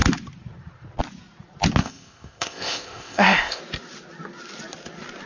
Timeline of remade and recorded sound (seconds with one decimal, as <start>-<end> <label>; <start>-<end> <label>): 0.0-1.8 recorded; 1.8-3.6 remade; 3.6-5.3 recorded

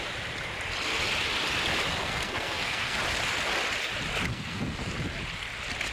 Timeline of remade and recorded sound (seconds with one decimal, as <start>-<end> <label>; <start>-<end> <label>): 0.0-2.0 recorded; 2.0-3.0 remade; 3.0-4.3 recorded; 4.3-4.9 remade; 4.9-5.9 recorded

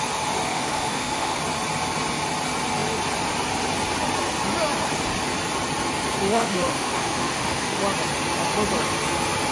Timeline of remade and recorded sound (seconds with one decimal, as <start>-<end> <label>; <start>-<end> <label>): 0.0-0.5 recorded; 0.5-1.4 remade; 1.4-6.3 recorded; 6.3-7.8 remade; 7.8-9.5 recorded

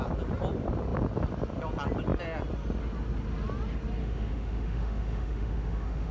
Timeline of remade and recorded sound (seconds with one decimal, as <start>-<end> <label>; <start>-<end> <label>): 0.0-4.0 recorded; 4.0-6.1 remade

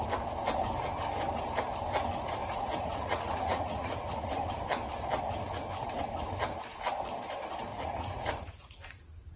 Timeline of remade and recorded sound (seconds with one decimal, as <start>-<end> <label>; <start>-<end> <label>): 0.0-2.4 recorded; 2.4-4.5 remade; 4.5-7.7 recorded; 7.7-9.0 remade; 9.0-9.4 recorded

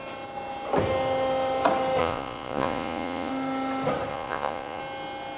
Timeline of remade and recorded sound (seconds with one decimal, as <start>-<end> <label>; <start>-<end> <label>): 0.0-2.0 recorded; 2.0-3.3 remade; 3.3-4.1 recorded; 4.1-4.8 remade; 4.8-5.4 recorded